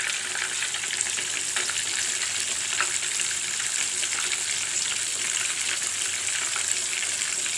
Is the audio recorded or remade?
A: remade